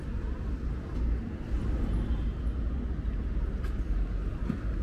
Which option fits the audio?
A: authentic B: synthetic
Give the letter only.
A